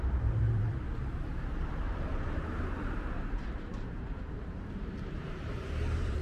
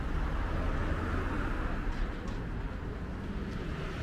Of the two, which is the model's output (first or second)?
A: first